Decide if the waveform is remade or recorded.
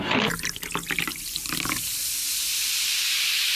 recorded